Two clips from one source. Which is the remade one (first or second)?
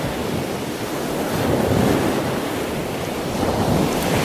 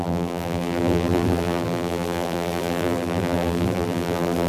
second